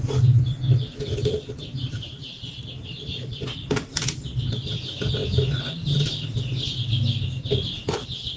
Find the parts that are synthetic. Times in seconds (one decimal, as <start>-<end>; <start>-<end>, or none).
1.6-3.4